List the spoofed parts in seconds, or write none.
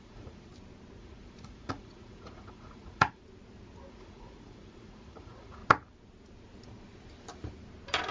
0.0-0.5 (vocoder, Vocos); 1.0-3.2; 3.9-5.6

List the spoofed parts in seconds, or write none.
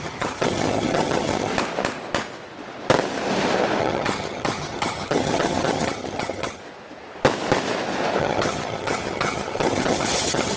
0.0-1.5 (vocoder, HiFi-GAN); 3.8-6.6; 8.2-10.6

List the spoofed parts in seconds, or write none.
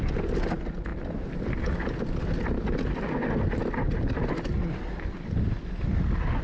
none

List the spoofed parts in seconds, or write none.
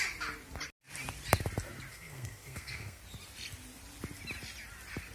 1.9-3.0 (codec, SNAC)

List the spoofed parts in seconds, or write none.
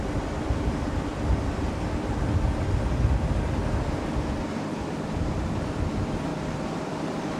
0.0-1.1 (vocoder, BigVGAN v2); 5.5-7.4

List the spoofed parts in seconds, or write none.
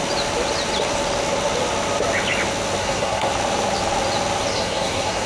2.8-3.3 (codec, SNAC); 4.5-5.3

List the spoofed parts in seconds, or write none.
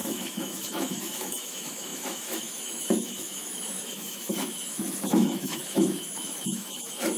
0.0-7.2 (autoencoder, DAC-VAE)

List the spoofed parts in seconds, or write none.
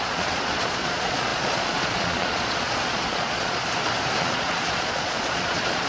0.0-3.6 (vocoder, Vocos); 4.2-5.9